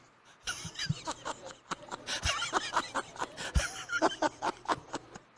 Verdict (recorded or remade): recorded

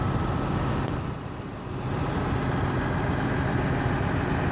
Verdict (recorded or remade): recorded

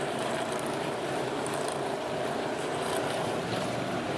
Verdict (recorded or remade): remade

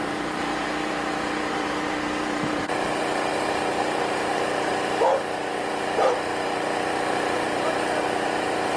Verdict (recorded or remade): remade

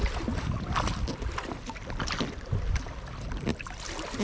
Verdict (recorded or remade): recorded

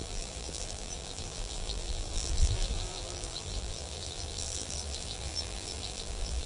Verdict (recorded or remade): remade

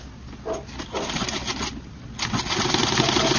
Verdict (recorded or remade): recorded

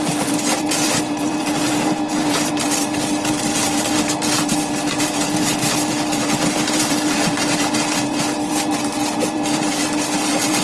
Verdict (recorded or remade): remade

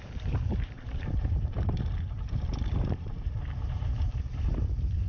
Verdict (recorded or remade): remade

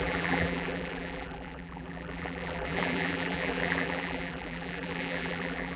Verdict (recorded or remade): remade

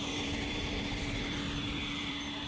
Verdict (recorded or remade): remade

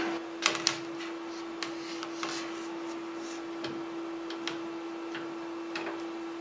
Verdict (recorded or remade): recorded